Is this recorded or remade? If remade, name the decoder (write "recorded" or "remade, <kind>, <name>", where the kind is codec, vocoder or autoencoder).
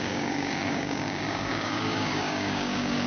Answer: remade, codec, DAC